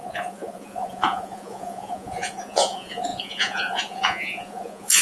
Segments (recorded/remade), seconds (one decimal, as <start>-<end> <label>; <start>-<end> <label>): 0.0-5.0 remade